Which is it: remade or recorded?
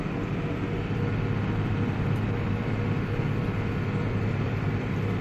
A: remade